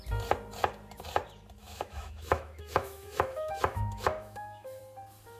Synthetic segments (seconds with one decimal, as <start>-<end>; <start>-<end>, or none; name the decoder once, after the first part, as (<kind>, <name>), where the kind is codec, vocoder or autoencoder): 1.6-4.8 (autoencoder, DAC-VAE)